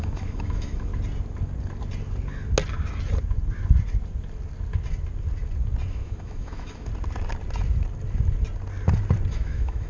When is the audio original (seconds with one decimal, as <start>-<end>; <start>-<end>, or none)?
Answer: 0.9-5.9; 6.9-9.3